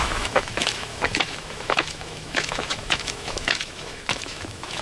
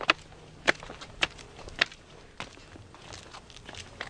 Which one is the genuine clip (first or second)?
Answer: second